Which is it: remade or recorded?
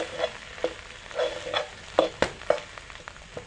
recorded